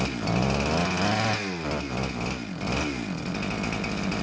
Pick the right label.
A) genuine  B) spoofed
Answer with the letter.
A